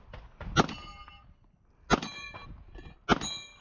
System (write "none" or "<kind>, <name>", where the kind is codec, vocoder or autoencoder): none